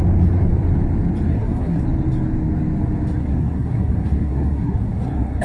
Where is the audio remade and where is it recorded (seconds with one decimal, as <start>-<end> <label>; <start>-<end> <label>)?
0.0-1.3 recorded; 1.3-1.8 remade; 1.8-3.2 recorded; 3.2-5.4 remade